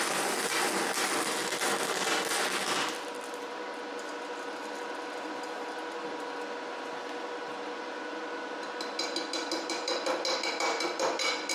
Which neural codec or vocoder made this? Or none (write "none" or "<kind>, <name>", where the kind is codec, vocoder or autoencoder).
none